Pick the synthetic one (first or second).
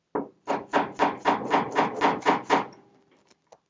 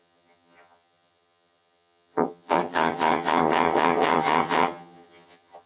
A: second